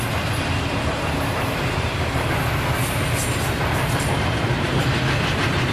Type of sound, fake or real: real